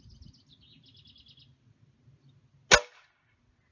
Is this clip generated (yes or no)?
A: no